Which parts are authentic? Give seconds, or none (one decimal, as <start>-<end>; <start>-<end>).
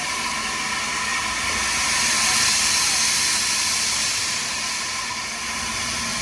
0.0-6.2